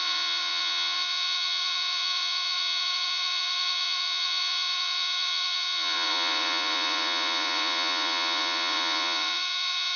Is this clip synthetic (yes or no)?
yes